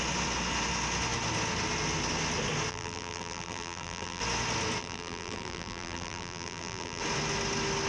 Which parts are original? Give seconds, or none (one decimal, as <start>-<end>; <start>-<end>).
0.0-2.7; 4.2-4.8; 7.0-7.9